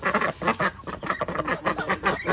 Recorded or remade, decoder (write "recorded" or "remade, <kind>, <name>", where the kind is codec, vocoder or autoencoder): recorded